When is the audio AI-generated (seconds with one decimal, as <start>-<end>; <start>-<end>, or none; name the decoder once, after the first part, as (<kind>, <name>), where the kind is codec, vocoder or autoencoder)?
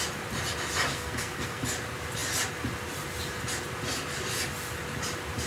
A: 0.9-1.6 (codec, SNAC)